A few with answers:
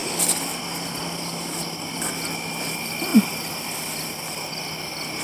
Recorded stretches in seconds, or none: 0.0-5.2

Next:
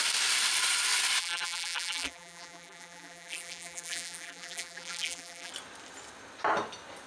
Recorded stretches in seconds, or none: 0.0-1.2; 5.5-7.1

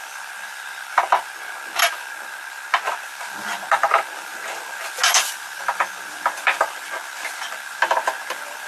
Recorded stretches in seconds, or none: 1.2-5.1

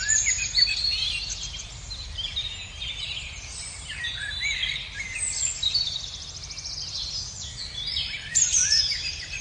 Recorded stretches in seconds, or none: 4.6-7.3

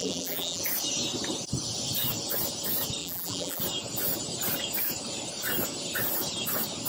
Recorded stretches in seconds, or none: 0.6-3.0; 3.6-6.9

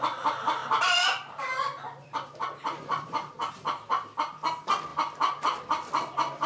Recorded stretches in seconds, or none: 0.0-0.6; 3.5-4.9

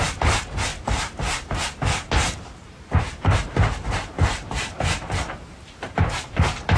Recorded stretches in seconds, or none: 0.0-0.7; 2.1-2.6

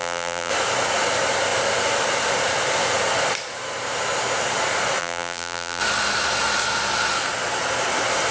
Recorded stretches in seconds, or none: 0.5-5.0; 5.8-8.3